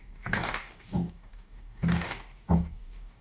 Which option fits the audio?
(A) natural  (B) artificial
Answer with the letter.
B